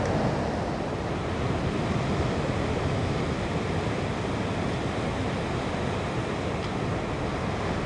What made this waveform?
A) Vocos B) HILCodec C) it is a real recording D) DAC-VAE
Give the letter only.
C